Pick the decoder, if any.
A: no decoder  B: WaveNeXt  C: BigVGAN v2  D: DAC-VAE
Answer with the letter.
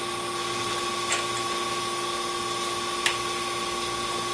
A